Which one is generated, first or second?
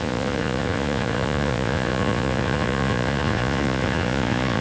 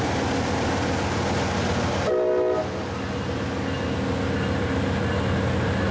first